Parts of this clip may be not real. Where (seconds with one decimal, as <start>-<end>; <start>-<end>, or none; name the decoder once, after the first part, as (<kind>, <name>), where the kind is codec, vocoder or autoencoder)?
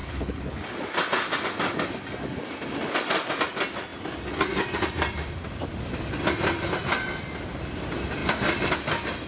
0.0-0.6 (codec, HILCodec)